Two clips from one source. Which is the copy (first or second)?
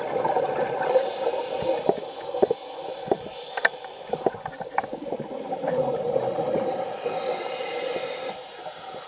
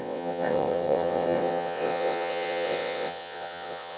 second